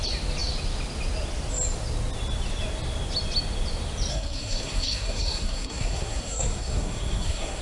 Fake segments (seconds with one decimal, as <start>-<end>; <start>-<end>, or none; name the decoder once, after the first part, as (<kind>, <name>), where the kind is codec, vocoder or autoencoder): 4.1-7.6 (codec, SNAC)